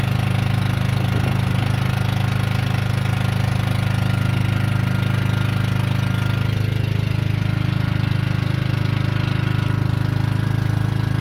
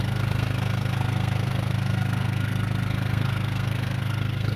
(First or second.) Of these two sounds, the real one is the first